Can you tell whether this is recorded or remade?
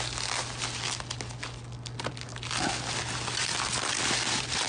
recorded